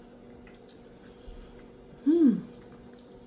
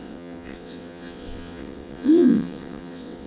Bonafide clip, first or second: first